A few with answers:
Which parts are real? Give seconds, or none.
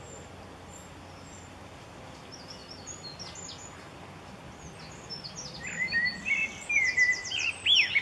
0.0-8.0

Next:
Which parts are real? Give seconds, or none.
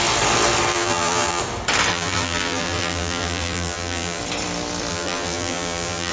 0.0-0.7; 1.4-1.9; 4.2-4.9